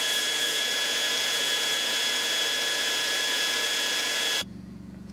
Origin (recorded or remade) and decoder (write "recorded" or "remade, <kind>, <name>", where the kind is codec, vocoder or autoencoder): remade, vocoder, Vocos